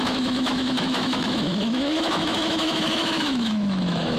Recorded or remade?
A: remade